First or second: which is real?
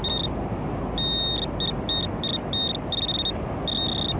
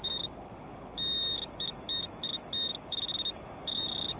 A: first